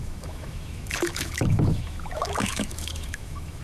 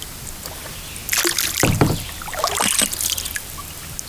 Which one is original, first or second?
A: second